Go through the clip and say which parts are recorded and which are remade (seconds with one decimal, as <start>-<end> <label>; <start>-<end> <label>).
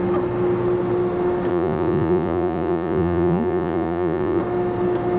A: 0.0-1.5 recorded; 1.5-4.4 remade; 4.4-5.2 recorded